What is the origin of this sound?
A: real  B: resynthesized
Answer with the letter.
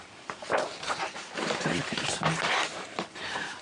B